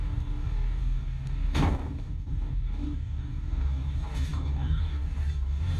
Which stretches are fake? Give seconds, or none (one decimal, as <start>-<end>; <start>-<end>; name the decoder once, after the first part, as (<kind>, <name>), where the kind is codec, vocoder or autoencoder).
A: 0.0-5.8 (codec, DAC)